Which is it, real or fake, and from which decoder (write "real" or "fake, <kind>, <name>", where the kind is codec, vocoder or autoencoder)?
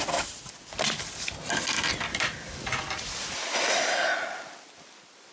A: real